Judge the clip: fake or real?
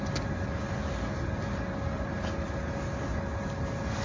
real